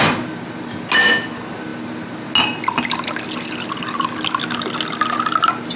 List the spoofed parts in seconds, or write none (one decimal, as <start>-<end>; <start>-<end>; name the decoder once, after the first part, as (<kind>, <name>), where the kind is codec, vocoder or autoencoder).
none